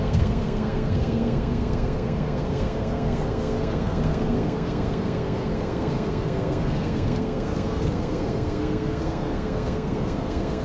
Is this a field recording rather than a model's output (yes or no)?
no